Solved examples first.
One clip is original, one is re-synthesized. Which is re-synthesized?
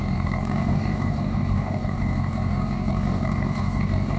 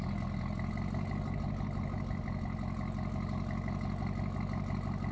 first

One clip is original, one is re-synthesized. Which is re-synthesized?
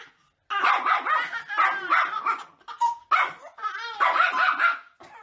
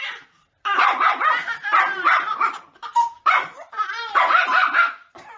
second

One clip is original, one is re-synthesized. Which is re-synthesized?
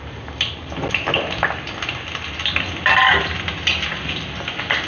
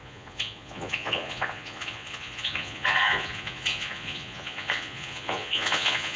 second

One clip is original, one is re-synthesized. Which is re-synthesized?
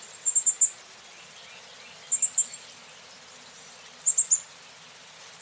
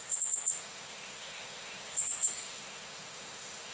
second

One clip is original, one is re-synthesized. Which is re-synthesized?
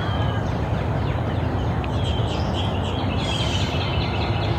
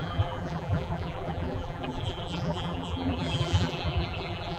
second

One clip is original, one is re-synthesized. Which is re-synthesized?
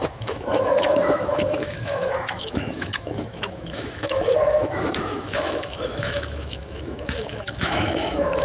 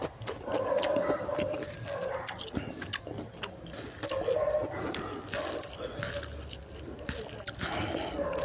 first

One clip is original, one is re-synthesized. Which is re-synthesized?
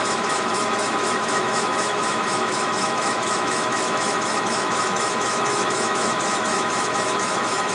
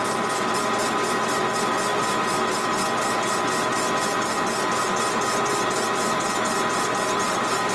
first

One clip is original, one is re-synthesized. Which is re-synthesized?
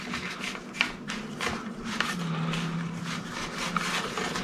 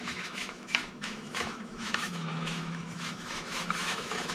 second